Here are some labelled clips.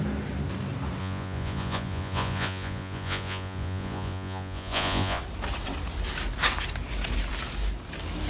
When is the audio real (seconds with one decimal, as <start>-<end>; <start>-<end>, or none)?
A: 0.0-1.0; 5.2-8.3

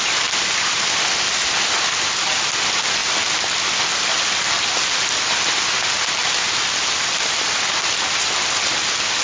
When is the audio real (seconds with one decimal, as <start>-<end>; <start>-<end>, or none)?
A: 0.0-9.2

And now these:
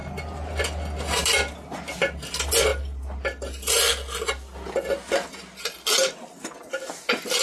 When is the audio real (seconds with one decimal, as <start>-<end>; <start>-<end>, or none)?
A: 0.0-7.4

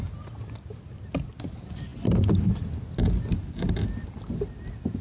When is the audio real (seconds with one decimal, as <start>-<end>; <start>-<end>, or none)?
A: 0.0-5.0

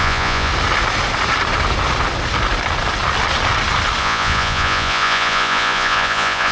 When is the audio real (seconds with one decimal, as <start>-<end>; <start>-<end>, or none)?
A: 0.5-4.0

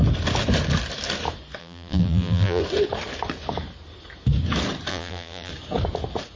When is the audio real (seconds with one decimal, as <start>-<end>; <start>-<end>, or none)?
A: 0.0-1.6; 2.6-4.9; 5.5-6.4

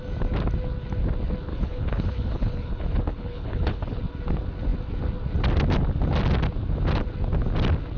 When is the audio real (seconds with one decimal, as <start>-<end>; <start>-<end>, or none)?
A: 0.0-1.5; 4.0-8.0

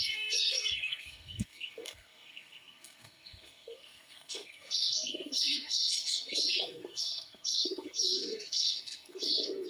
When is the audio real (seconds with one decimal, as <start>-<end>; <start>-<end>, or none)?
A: none